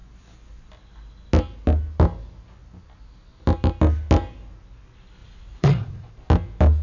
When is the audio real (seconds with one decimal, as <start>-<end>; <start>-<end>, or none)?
0.0-5.2; 6.1-6.8